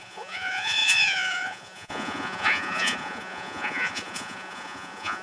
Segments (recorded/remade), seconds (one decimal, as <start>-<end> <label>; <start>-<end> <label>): 0.0-5.2 remade